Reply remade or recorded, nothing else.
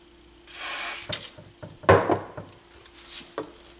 recorded